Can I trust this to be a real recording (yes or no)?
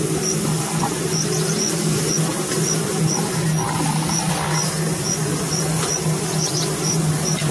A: yes